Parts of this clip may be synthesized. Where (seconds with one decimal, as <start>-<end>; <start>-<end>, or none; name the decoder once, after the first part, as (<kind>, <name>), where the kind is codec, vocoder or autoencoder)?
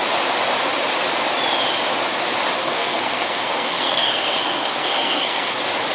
2.6-5.5 (codec, SNAC)